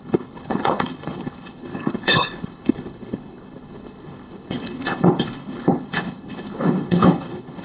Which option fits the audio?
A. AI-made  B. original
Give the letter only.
A